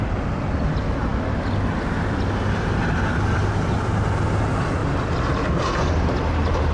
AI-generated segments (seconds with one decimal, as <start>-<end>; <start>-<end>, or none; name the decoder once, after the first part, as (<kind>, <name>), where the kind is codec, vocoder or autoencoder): 3.4-4.0 (vocoder, BigVGAN v2); 4.8-5.6